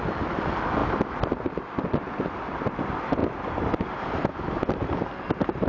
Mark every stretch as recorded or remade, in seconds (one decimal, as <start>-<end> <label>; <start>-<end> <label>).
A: 0.0-3.2 recorded; 3.2-4.1 remade; 4.1-5.7 recorded